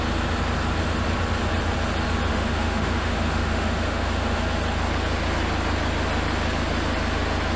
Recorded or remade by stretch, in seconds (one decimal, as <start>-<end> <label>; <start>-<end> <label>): 0.0-2.3 recorded; 2.3-4.4 remade; 4.4-7.6 recorded